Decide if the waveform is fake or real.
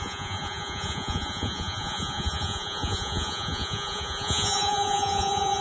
fake